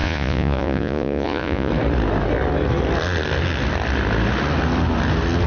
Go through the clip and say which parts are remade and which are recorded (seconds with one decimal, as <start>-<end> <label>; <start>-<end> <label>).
0.0-1.7 remade; 1.7-5.5 recorded